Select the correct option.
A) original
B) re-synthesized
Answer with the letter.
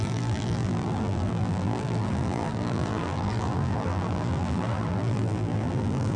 B